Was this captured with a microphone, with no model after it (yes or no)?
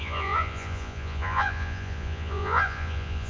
no